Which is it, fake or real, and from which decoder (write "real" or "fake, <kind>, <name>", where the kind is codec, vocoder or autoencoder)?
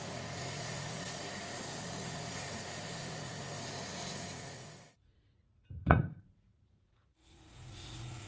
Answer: fake, vocoder, Vocos